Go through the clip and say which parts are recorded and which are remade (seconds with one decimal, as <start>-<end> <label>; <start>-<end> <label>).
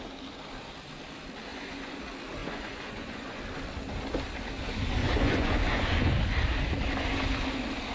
0.0-1.5 recorded; 1.5-2.0 remade; 2.0-2.4 recorded; 2.4-3.4 remade; 3.4-5.0 recorded; 5.0-6.1 remade; 6.1-7.9 recorded